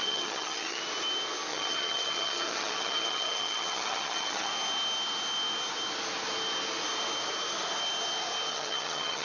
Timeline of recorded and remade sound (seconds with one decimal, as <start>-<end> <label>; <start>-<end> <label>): 0.0-0.8 remade; 0.8-1.5 recorded; 1.5-4.5 remade; 4.5-8.5 recorded; 8.5-9.2 remade